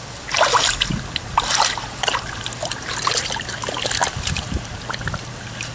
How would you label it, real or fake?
real